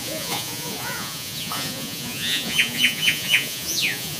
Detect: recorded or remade remade